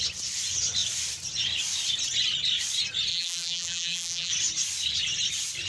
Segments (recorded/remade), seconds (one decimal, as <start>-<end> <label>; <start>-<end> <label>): 0.0-3.1 recorded; 3.1-4.3 remade; 4.3-5.7 recorded